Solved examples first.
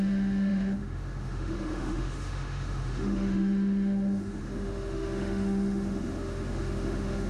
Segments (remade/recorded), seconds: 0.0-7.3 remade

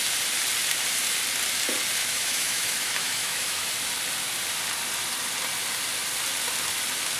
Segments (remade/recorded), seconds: 0.0-2.0 recorded; 2.0-3.7 remade; 3.7-7.2 recorded

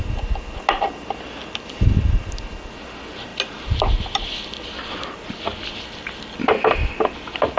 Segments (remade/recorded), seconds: 0.0-7.6 recorded

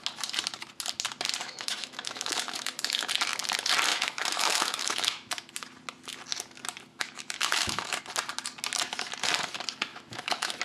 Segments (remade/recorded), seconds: 0.0-1.4 recorded; 1.4-3.1 remade; 3.1-3.9 recorded; 3.9-5.3 remade; 5.3-6.9 recorded; 6.9-8.0 remade; 8.0-9.9 recorded; 9.9-10.6 remade

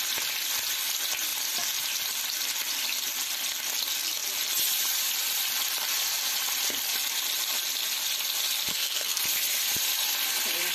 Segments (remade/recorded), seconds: 0.0-8.7 recorded; 8.7-9.2 remade; 9.2-10.7 recorded

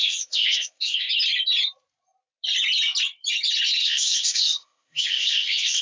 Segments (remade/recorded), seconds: 0.0-1.1 remade; 1.1-3.8 recorded; 3.8-5.8 remade

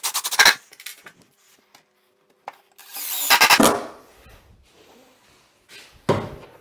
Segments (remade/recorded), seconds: 0.0-6.6 recorded